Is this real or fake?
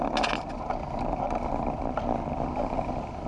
real